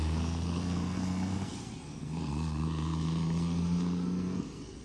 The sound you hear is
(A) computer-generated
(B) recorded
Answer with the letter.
A